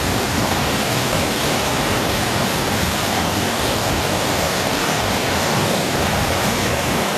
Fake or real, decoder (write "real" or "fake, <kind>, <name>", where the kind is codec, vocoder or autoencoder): fake, codec, DAC